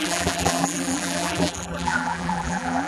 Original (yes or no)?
no